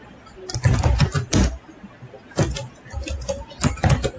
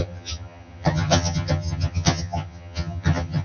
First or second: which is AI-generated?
second